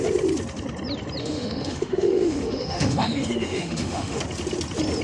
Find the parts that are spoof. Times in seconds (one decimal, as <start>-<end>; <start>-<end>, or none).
1.2-4.2